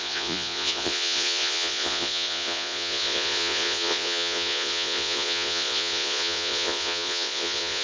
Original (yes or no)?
no